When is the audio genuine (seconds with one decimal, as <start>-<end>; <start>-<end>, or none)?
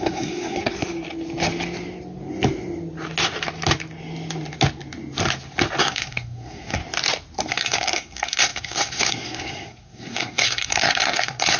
0.6-5.8; 6.8-7.5